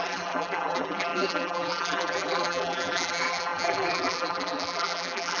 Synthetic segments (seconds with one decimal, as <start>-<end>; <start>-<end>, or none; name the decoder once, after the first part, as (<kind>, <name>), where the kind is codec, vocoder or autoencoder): 0.0-5.4 (vocoder, BigVGAN v2)